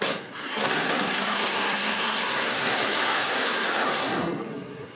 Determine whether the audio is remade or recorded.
remade